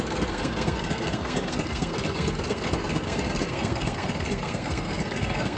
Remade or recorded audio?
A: remade